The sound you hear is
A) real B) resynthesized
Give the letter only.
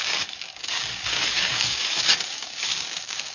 B